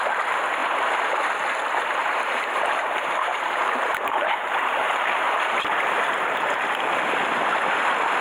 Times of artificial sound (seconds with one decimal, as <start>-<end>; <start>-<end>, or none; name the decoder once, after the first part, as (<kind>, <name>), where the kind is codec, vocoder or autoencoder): 2.0-6.5 (vocoder, BigVGAN v2)